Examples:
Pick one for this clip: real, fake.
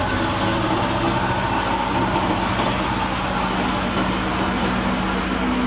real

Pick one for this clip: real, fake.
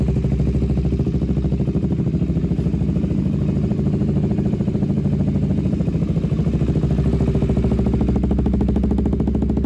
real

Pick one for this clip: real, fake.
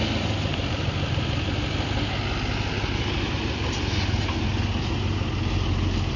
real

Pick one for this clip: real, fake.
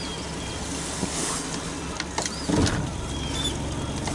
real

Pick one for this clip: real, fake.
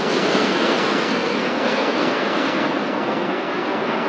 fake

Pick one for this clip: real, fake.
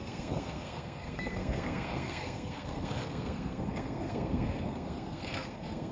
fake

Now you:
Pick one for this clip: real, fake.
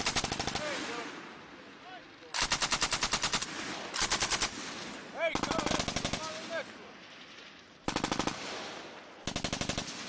real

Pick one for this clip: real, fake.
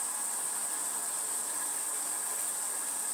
real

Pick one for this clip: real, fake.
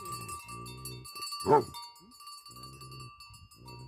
real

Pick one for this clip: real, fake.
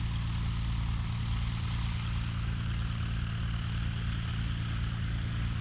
real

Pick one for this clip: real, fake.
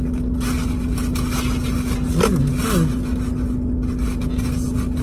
real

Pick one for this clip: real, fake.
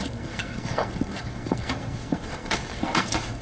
fake